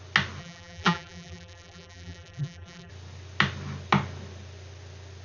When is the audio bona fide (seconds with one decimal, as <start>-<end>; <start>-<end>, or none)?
0.0-0.4; 2.9-5.2